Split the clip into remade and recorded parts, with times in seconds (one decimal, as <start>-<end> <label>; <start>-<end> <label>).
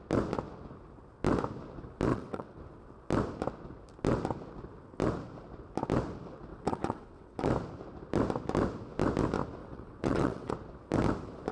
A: 0.0-2.1 recorded; 2.1-2.6 remade; 2.6-6.5 recorded; 6.5-7.4 remade; 7.4-9.6 recorded; 9.6-10.5 remade; 10.5-11.5 recorded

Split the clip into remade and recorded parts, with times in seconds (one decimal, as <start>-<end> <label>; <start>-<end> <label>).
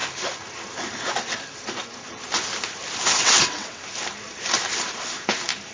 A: 0.0-3.2 recorded; 3.2-3.8 remade; 3.8-5.7 recorded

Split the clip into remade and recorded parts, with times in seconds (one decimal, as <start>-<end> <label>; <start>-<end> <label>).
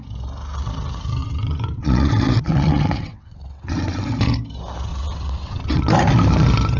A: 0.0-1.2 recorded; 1.2-4.0 remade; 4.0-4.9 recorded; 4.9-5.8 remade; 5.8-6.8 recorded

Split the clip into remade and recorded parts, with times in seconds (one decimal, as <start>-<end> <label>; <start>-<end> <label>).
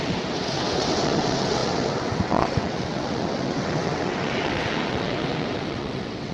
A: 0.0-6.3 remade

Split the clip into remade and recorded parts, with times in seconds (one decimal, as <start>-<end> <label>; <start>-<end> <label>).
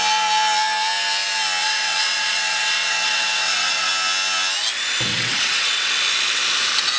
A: 0.0-1.6 recorded; 1.6-3.9 remade; 3.9-5.1 recorded; 5.1-5.9 remade; 5.9-7.0 recorded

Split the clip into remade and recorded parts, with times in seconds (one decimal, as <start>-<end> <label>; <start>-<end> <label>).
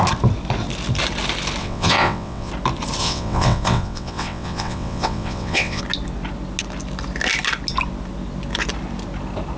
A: 0.0-1.6 recorded; 1.6-2.5 remade; 2.5-3.0 recorded; 3.0-5.8 remade; 5.8-9.6 recorded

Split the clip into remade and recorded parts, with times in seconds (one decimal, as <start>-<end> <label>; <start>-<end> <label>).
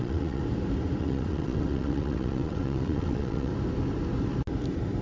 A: 0.0-0.4 remade; 0.4-1.0 recorded; 1.0-3.5 remade; 3.5-5.0 recorded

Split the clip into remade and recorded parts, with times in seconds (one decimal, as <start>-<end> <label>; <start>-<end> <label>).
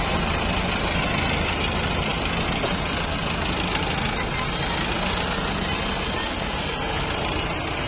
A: 0.0-7.9 recorded